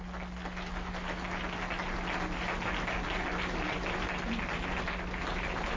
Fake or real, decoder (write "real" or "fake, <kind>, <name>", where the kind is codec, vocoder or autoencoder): real